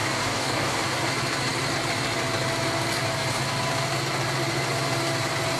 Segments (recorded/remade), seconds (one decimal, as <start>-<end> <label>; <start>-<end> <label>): 0.0-1.1 remade; 1.1-5.6 recorded